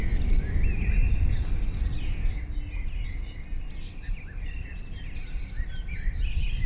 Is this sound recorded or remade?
recorded